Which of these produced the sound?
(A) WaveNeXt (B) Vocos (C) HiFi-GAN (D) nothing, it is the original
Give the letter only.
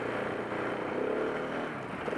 D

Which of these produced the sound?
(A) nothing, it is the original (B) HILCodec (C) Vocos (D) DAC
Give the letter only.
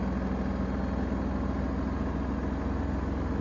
A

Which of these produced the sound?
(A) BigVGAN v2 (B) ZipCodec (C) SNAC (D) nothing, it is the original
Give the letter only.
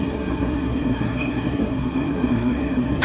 C